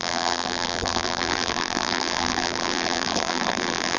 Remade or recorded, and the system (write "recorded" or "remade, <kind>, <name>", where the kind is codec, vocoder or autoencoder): remade, vocoder, BigVGAN v2